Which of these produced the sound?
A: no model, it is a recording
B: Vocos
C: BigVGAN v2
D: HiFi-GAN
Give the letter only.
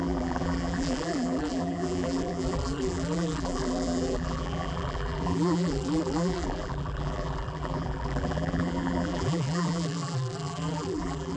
C